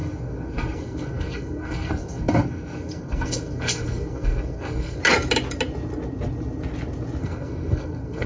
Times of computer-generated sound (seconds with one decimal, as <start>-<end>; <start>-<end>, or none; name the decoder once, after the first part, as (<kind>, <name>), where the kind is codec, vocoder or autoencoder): 0.0-5.0 (codec, SNAC); 7.2-8.3